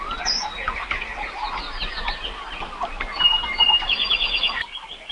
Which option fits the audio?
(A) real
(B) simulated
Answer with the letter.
A